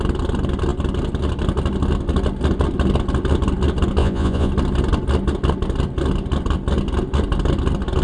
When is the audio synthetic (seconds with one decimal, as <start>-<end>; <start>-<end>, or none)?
4.0-4.5